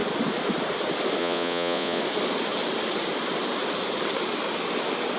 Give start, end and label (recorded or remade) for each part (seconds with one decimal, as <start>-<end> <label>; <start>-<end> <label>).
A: 0.0-1.2 recorded; 1.2-2.0 remade; 2.0-5.2 recorded